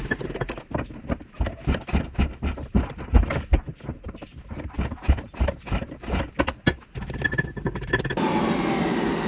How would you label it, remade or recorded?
recorded